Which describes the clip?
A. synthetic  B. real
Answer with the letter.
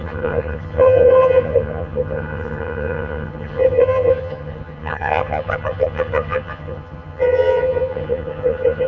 A